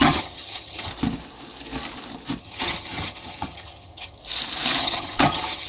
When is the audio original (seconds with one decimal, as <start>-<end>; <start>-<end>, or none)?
0.9-2.4; 4.2-4.8